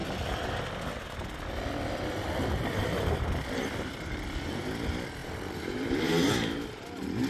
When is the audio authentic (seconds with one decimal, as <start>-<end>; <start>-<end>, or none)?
0.0-5.2; 5.9-7.3

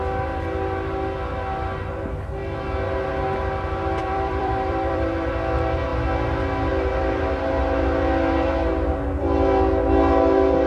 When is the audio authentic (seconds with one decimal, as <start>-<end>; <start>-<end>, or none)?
0.0-4.0; 5.3-10.7

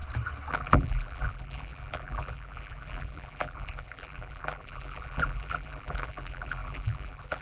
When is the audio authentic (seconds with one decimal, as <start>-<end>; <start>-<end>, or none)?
0.0-0.5

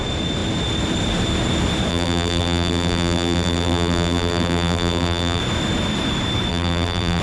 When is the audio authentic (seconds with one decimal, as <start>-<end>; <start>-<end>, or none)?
0.0-1.9; 5.4-6.5

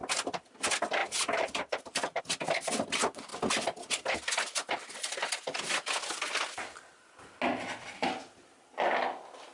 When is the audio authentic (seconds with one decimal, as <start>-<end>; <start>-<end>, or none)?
0.0-1.0; 2.2-9.5

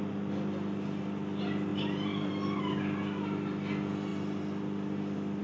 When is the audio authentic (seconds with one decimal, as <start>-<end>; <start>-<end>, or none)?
0.0-1.7; 2.3-5.4

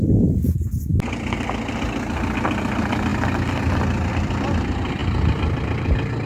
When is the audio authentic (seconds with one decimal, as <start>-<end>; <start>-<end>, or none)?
0.9-1.8; 3.1-4.1

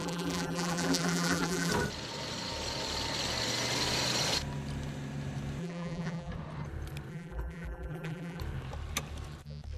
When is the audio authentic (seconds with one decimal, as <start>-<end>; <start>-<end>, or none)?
1.7-5.6; 6.3-7.1; 8.4-9.8